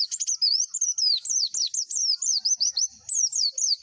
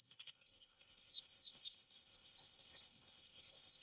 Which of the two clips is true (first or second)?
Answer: first